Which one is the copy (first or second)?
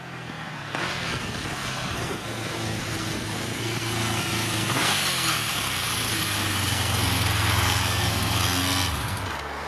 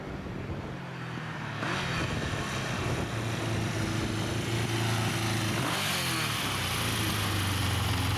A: first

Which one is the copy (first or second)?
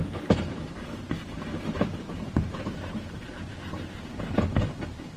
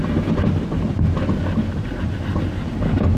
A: first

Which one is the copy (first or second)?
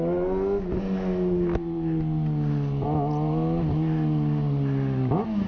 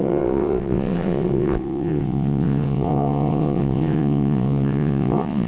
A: second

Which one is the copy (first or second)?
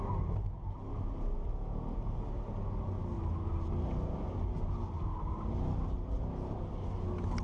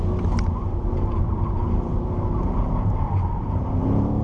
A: second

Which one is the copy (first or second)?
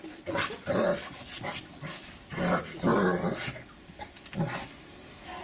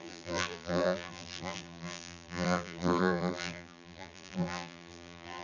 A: second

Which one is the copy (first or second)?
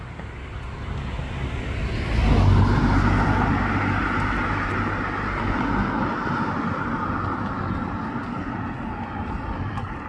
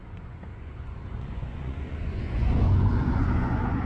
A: second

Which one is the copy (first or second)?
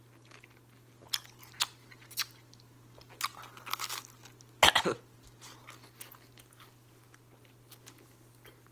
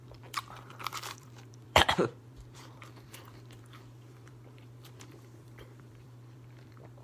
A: second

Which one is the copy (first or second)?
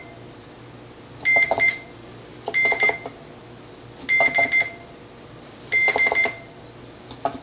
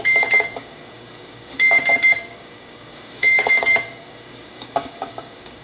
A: second